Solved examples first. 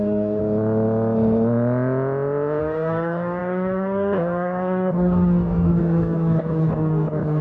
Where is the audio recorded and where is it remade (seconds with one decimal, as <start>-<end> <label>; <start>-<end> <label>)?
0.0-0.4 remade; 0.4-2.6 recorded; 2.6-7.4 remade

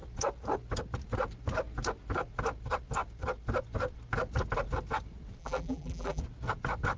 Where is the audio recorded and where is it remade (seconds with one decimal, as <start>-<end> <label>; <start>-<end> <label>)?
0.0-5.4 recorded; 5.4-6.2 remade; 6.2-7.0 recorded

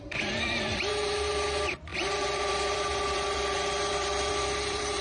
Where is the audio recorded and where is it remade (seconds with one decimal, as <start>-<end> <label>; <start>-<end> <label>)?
0.0-5.0 remade

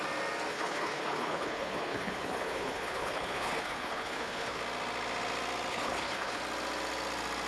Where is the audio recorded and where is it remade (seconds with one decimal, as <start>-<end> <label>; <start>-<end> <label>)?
0.0-0.5 recorded; 0.5-4.6 remade; 4.6-5.7 recorded; 5.7-6.4 remade; 6.4-7.5 recorded